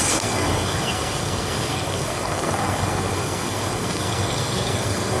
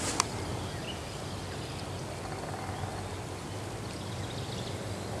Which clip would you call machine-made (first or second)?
first